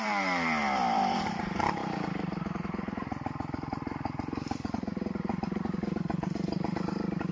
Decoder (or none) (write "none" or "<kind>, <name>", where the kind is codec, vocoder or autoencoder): vocoder, BigVGAN v2